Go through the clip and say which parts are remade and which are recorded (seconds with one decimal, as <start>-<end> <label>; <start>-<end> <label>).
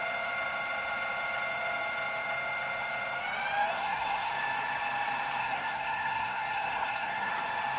0.0-3.7 recorded; 3.7-4.3 remade; 4.3-5.4 recorded; 5.4-7.3 remade; 7.3-7.8 recorded